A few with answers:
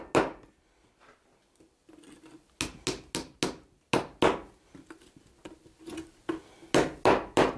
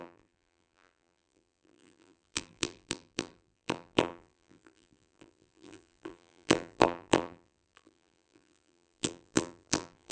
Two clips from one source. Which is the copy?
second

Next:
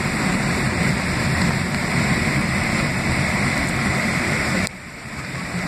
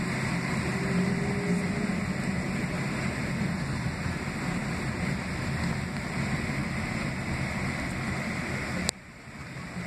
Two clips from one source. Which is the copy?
first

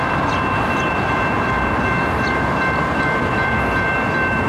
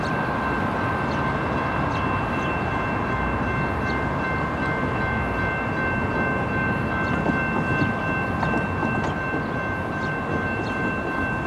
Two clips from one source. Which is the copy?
first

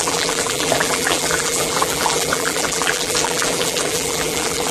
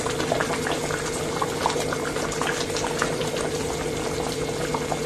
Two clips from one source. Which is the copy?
first